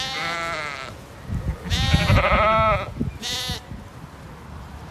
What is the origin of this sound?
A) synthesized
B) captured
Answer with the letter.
B